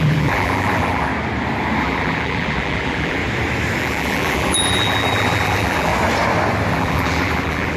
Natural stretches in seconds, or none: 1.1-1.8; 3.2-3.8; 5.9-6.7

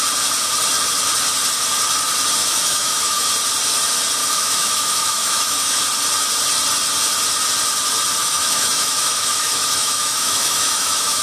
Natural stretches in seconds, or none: 0.0-2.4; 3.3-4.2; 5.8-8.2

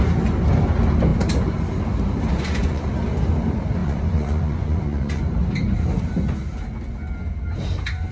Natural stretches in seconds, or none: 0.0-2.3; 2.9-3.8; 5.2-8.1

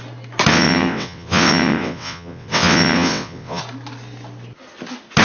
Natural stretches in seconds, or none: 0.0-0.5; 3.6-5.2

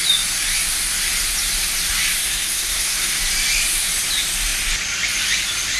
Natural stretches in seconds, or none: 0.0-2.2; 3.2-5.8